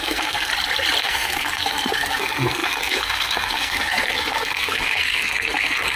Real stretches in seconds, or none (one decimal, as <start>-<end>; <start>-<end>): 0.5-1.0